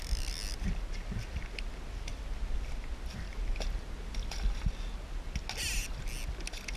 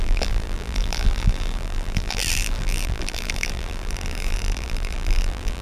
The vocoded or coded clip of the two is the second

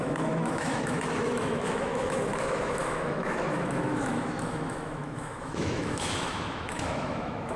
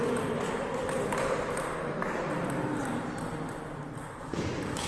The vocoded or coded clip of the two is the first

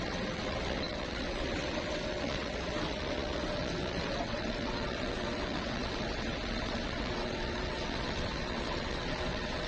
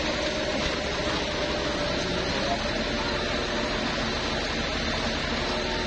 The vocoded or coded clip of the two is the first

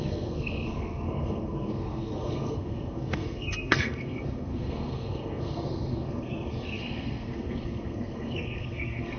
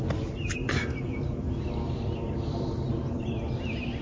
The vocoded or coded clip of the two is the first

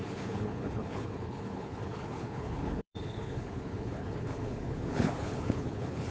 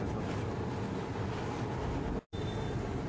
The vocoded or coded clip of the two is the first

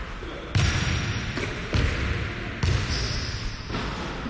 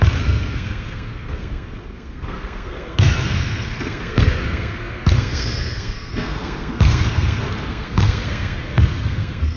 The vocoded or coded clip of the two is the second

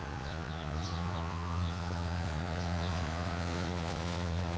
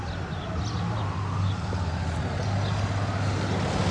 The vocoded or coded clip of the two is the first